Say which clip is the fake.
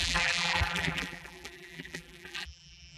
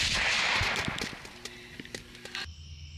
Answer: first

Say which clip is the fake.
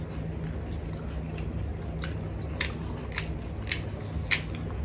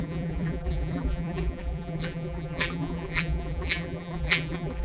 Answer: second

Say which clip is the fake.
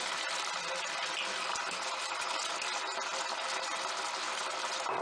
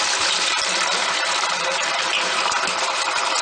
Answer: second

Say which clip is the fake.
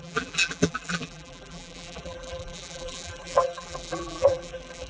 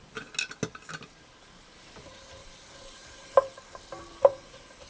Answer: first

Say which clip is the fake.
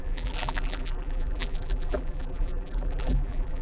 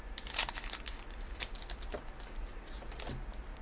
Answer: first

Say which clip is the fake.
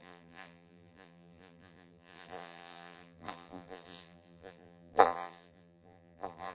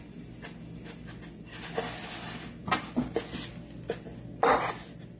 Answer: first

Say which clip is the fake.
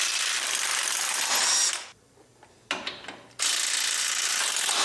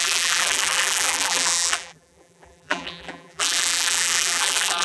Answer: second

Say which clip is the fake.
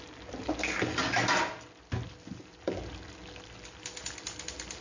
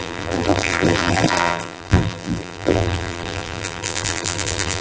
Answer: second